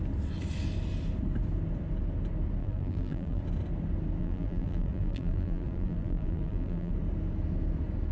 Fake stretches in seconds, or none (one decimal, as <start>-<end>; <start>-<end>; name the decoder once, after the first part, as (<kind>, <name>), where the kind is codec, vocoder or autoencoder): 2.6-3.4 (vocoder, BigVGAN v2); 4.2-6.9